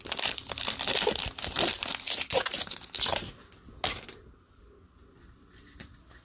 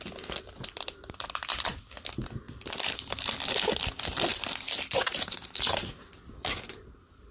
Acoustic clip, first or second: first